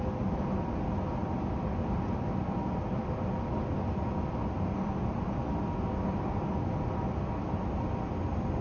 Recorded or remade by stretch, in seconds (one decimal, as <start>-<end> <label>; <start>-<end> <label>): 0.0-8.6 recorded

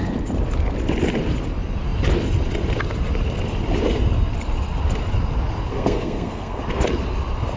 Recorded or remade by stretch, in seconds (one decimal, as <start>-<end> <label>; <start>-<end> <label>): 0.0-5.7 recorded; 5.7-6.6 remade; 6.6-7.6 recorded

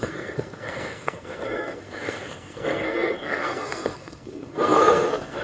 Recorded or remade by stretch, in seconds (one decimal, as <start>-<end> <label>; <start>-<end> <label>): 0.0-5.4 remade

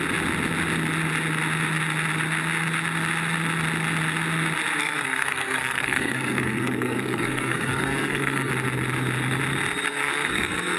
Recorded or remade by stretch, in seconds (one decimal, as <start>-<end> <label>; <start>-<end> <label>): 0.0-4.8 recorded; 4.8-8.5 remade; 8.5-9.9 recorded; 9.9-10.8 remade

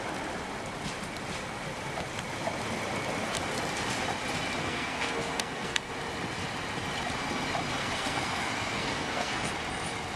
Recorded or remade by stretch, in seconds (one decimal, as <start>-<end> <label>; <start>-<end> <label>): 0.0-4.6 recorded; 4.6-5.9 remade; 5.9-7.8 recorded; 7.8-9.5 remade; 9.5-10.2 recorded

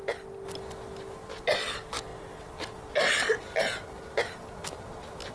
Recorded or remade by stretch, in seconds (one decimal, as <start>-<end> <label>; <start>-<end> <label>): 0.0-5.3 recorded